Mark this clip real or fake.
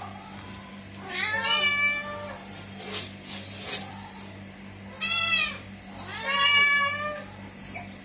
real